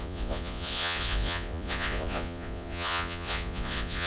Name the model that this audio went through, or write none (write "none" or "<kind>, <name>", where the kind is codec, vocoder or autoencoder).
vocoder, Vocos